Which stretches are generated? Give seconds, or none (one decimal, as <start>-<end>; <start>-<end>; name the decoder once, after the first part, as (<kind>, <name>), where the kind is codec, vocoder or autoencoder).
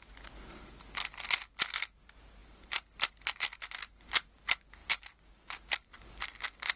2.4-3.1 (vocoder, BigVGAN v2)